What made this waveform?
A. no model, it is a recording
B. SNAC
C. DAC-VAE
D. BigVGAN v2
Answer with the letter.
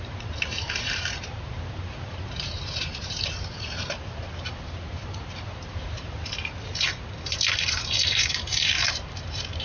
D